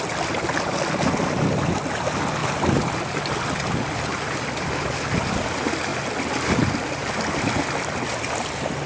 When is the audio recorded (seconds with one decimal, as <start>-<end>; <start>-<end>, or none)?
0.0-8.9